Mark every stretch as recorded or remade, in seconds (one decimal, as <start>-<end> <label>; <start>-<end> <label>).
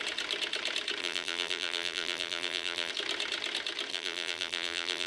0.0-1.0 recorded; 1.0-2.9 remade; 2.9-3.9 recorded; 3.9-5.1 remade